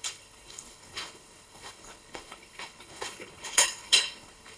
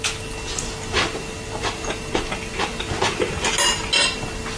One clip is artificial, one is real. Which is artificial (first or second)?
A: first